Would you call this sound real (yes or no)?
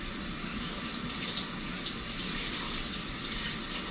yes